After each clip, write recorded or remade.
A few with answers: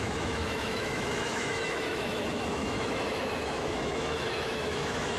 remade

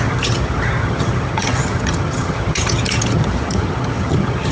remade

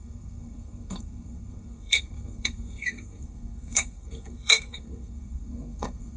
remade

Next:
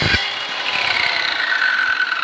recorded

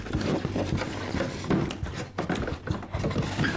recorded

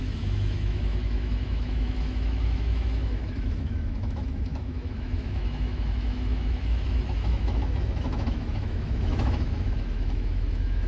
remade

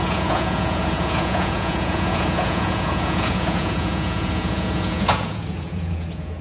remade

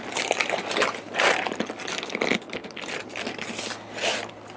recorded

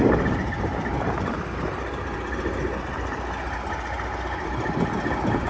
recorded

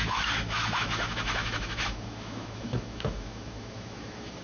remade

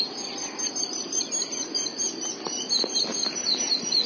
recorded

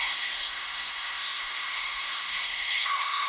remade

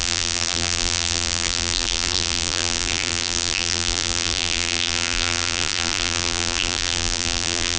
remade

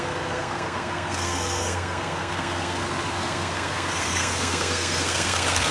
remade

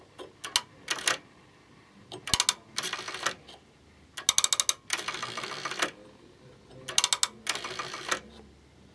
recorded